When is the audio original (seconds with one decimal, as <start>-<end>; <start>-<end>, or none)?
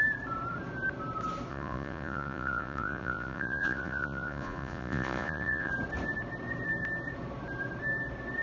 0.0-1.5; 5.7-8.4